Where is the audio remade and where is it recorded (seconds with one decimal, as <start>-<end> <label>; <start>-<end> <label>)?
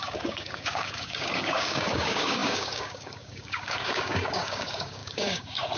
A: 0.0-5.8 remade